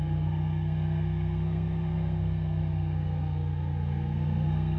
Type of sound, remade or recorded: remade